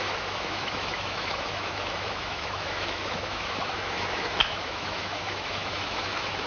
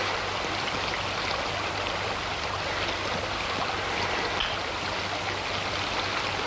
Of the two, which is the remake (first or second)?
first